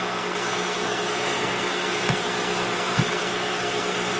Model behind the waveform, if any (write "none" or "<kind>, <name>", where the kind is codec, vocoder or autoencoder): codec, SNAC